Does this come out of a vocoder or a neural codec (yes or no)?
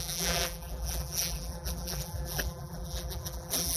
yes